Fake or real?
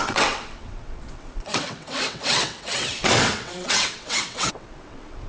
fake